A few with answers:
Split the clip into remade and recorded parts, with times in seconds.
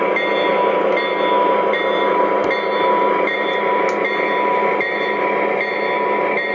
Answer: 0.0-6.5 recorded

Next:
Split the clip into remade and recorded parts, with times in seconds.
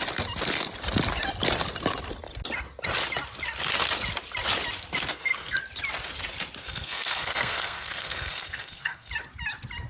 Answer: 0.0-5.1 recorded; 5.1-5.6 remade; 5.6-6.6 recorded; 6.6-9.1 remade; 9.1-9.9 recorded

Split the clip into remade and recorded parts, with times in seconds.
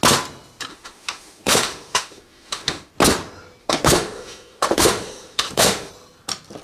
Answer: 0.0-0.7 recorded; 0.7-2.9 remade; 2.9-3.6 recorded; 3.6-5.9 remade; 5.9-6.6 recorded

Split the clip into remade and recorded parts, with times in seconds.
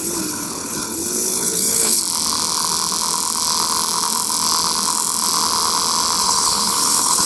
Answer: 0.0-2.0 remade; 2.0-6.2 recorded; 6.2-7.3 remade